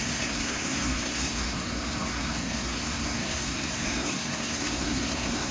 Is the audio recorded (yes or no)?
no